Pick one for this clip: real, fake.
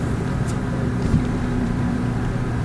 fake